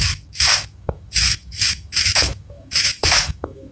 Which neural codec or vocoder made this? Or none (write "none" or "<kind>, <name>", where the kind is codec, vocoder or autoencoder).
autoencoder, DAC-VAE